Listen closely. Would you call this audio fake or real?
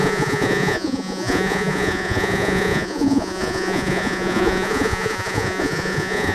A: fake